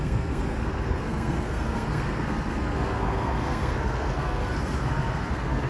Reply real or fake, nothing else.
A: fake